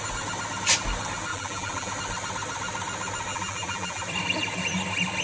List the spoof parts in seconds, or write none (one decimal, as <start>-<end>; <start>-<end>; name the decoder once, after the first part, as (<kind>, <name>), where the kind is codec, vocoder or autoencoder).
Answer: 1.3-1.9 (vocoder, BigVGAN v2); 3.3-4.0